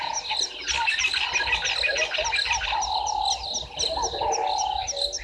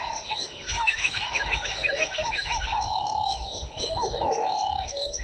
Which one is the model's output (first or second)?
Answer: second